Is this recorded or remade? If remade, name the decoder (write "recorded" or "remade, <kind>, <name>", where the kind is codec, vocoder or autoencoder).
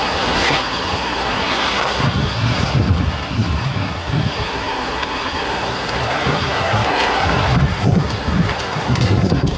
remade, codec, SNAC